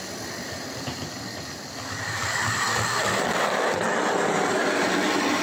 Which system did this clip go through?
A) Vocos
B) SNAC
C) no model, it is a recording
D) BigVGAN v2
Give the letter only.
D